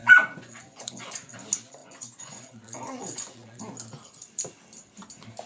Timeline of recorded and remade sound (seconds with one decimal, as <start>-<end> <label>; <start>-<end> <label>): 0.0-1.3 remade; 1.3-1.8 recorded; 1.8-3.6 remade; 3.6-5.5 recorded